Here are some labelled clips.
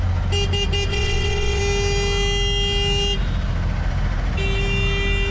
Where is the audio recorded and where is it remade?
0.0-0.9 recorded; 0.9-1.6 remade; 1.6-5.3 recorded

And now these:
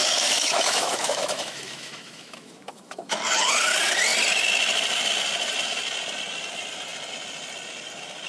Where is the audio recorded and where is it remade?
0.0-3.2 remade; 3.2-8.3 recorded

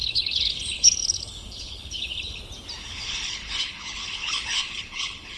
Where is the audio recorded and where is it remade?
0.0-2.4 remade; 2.4-2.8 recorded; 2.8-5.4 remade